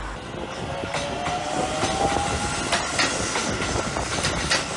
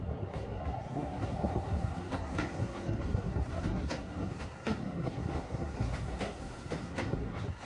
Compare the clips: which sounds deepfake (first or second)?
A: second